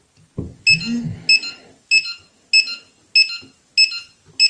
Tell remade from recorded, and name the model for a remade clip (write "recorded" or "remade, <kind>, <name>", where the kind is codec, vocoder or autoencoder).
recorded